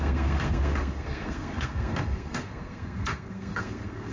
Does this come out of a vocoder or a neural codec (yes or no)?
yes